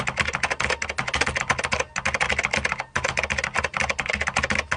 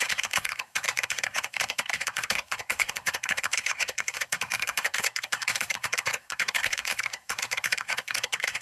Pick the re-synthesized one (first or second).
second